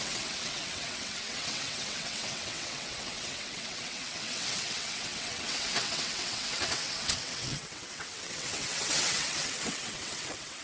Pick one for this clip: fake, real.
fake